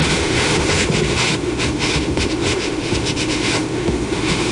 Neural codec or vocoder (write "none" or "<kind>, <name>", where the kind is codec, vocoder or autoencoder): autoencoder, DAC-VAE